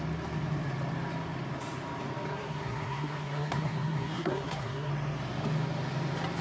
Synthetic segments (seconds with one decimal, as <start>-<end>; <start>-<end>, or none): 2.3-4.9